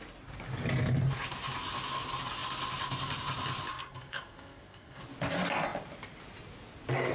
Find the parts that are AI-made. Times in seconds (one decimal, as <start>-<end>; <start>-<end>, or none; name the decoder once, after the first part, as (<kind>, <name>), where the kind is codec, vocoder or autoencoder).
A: 3.7-5.0 (codec, SNAC)